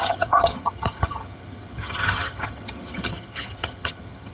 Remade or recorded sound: remade